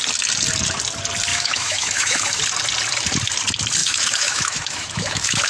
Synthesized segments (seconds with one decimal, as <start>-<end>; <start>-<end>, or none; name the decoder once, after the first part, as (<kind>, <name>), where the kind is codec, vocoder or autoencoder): 1.3-2.4 (autoencoder, DAC-VAE); 3.8-5.5